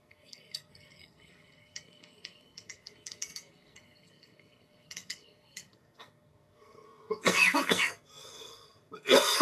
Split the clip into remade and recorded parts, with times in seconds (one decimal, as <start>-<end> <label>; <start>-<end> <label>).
0.0-9.4 remade